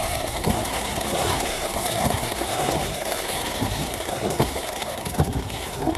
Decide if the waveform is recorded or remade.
remade